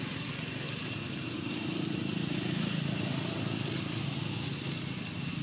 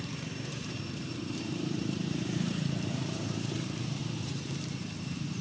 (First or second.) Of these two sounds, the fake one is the second